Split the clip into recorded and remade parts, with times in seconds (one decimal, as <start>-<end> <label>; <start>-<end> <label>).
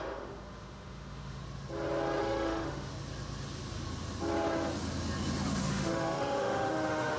0.0-1.4 remade; 1.4-2.2 recorded; 2.2-2.9 remade; 2.9-5.6 recorded; 5.6-7.2 remade